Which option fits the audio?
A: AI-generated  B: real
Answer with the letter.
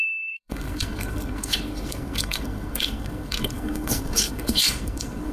A